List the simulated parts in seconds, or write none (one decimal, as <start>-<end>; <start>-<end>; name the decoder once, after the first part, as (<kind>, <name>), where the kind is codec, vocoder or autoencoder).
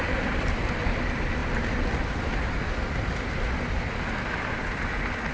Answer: none